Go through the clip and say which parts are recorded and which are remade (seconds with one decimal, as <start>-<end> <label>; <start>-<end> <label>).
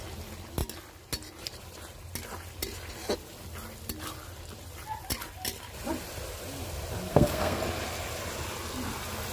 0.0-7.1 recorded; 7.1-7.6 remade; 7.6-9.3 recorded